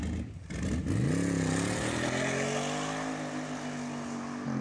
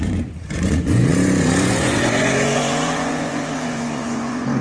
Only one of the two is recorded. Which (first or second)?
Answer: first